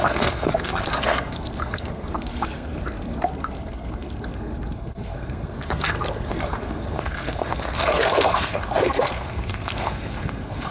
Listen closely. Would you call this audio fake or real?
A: fake